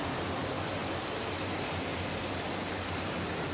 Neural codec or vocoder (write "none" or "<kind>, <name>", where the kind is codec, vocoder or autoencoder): none